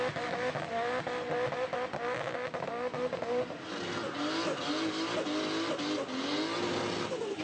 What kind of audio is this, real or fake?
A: real